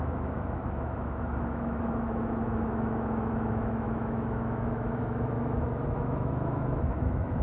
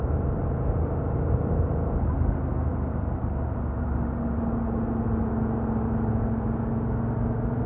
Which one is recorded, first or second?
second